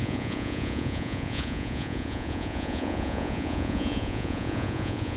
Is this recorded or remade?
remade